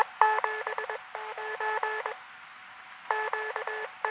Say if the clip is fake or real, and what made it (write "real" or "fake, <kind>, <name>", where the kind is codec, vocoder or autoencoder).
real